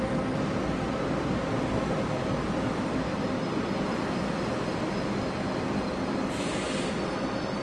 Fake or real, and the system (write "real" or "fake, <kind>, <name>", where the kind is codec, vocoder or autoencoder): real